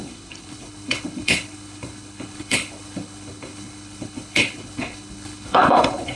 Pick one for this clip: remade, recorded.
remade